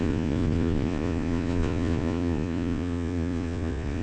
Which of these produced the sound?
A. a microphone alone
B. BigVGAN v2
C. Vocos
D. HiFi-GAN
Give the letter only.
C